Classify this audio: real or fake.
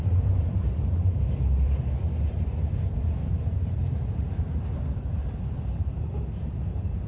fake